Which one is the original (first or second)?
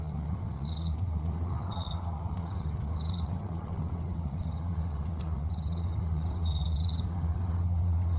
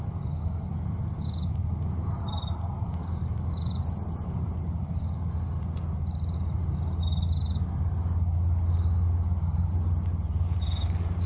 second